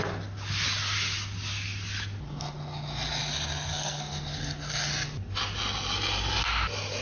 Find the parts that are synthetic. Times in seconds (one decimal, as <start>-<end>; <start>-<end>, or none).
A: 3.7-4.9